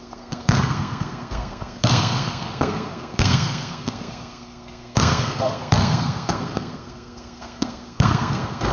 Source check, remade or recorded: remade